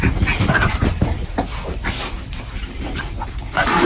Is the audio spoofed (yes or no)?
no